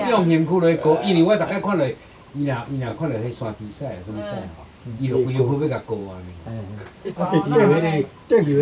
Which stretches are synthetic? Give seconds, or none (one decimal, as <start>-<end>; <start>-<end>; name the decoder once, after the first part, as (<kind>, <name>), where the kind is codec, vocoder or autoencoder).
none